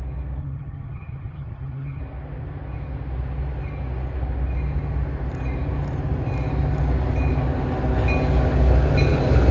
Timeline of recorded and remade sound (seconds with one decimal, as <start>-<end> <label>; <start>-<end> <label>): 0.0-0.4 recorded; 0.4-2.0 remade; 2.0-9.5 recorded